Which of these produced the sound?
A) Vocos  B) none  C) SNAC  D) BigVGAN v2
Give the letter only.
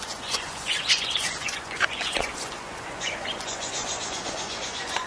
A